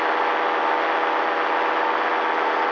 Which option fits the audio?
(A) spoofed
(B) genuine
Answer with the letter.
B